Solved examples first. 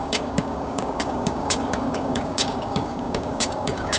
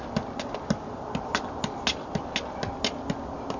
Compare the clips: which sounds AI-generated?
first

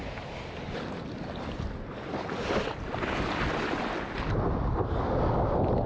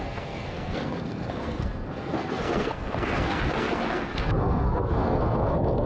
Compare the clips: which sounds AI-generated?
second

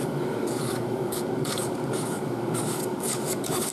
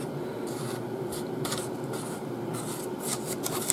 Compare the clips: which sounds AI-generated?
first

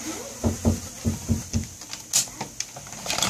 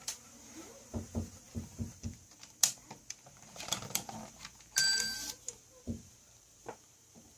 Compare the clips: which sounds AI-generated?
second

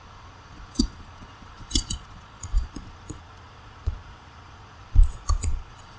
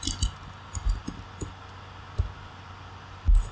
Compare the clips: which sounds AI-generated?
first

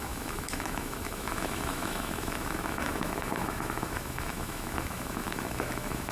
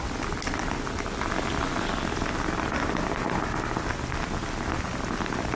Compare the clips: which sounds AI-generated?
first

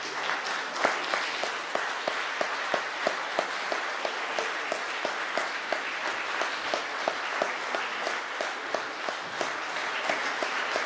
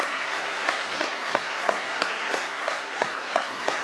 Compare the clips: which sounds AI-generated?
second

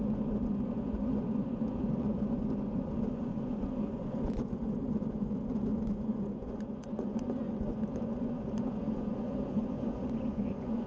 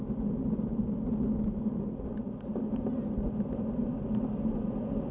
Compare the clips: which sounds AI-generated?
first